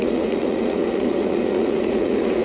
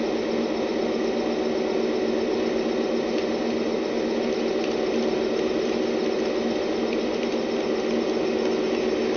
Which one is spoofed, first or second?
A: first